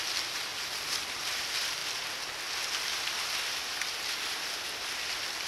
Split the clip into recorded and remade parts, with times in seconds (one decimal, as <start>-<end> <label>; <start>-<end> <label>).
0.0-5.5 recorded